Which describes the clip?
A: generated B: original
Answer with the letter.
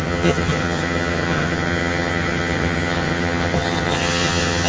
A